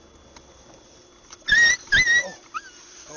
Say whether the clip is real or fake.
real